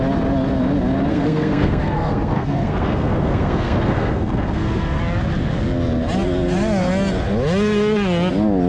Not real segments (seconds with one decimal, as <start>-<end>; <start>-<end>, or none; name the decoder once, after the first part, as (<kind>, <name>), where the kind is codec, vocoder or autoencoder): 1.1-5.0 (codec, SNAC)